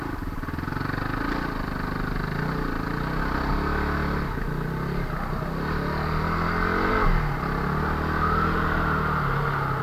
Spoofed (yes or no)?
no